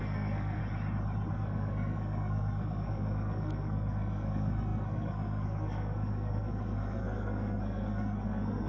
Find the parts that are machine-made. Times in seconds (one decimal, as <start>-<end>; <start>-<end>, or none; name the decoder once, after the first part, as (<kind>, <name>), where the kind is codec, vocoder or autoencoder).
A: 0.0-0.6 (codec, SNAC); 1.3-8.7